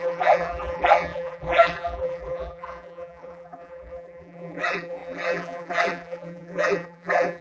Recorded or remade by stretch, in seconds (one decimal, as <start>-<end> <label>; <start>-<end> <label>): 0.0-7.4 remade